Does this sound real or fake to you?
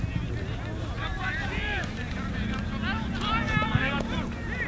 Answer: real